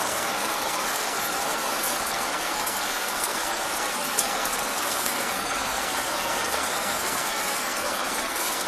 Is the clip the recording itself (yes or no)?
no